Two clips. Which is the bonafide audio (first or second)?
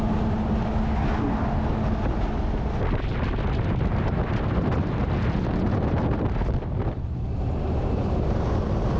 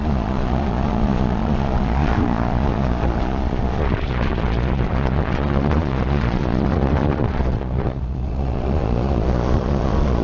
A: first